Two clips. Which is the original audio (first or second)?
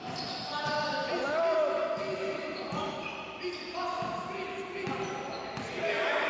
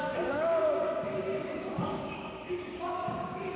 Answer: first